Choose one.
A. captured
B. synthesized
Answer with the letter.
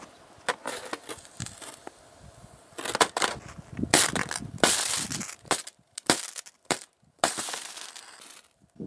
A